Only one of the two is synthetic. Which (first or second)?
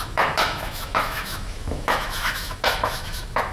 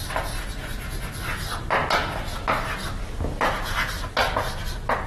first